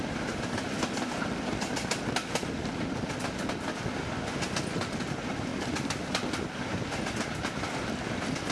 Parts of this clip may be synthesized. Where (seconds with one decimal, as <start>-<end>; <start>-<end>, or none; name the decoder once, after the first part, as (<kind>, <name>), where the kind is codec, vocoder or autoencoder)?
none